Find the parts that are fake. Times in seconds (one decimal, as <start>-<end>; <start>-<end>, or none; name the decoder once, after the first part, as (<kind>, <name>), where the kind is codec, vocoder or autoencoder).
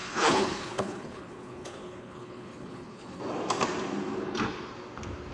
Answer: 0.0-3.2 (codec, HILCodec)